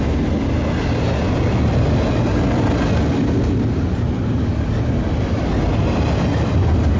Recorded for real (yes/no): yes